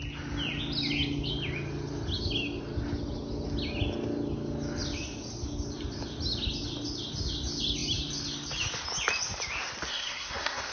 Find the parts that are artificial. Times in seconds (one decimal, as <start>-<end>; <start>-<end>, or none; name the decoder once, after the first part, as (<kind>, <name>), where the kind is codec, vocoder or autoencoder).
9.9-10.7 (codec, SNAC)